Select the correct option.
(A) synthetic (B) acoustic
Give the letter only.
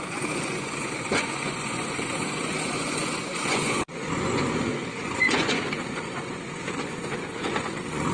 A